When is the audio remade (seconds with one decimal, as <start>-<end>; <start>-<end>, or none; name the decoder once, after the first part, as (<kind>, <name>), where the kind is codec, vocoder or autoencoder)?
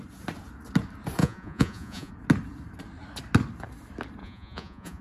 1.2-2.1 (vocoder, Vocos); 4.2-5.0